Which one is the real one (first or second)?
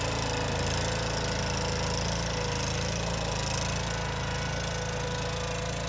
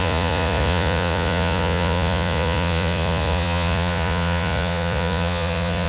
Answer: first